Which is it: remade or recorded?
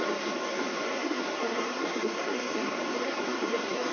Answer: remade